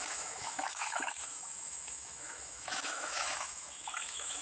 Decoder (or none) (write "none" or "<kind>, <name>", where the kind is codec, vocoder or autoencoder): autoencoder, DAC-VAE